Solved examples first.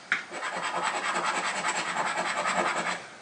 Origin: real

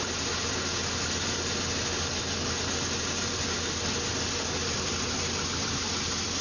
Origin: real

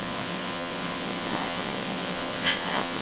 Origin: fake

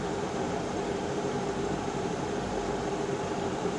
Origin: fake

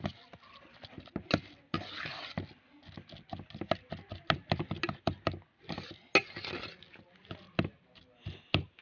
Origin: real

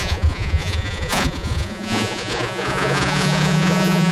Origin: fake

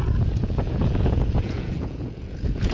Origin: fake